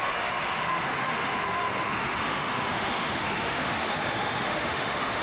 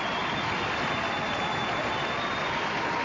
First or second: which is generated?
first